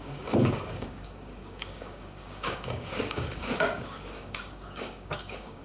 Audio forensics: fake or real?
fake